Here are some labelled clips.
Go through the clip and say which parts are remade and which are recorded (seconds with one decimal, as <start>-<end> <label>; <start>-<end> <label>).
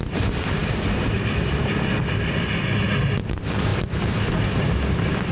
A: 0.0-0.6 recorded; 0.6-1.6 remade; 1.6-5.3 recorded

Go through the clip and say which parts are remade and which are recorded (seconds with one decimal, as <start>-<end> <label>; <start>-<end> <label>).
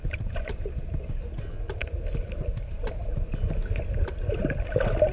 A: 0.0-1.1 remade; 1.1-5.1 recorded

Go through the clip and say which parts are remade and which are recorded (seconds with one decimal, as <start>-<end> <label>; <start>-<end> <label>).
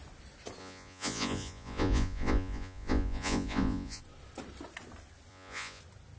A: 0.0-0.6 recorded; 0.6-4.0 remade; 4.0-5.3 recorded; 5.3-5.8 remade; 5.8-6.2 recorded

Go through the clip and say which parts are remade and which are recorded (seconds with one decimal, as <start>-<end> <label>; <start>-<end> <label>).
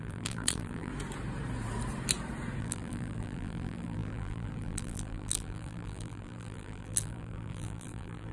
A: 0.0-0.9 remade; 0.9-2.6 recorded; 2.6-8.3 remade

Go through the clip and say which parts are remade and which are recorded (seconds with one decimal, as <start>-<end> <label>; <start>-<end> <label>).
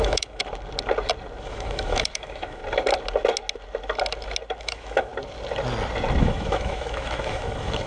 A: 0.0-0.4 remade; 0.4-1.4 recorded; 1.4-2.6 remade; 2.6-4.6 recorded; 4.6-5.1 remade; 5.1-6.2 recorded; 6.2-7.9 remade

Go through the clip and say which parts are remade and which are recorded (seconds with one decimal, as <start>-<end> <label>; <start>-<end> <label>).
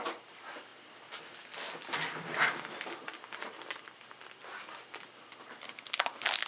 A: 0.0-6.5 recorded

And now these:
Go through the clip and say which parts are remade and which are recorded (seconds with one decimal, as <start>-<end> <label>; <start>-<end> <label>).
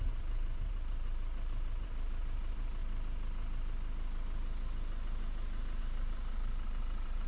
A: 0.0-2.8 remade; 2.8-5.8 recorded; 5.8-7.3 remade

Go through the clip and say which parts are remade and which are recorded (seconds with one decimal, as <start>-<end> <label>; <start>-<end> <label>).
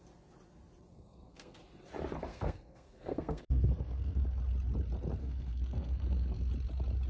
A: 0.0-0.9 recorded; 0.9-1.6 remade; 1.6-2.3 recorded; 2.3-4.2 remade; 4.2-5.2 recorded; 5.2-6.5 remade; 6.5-7.1 recorded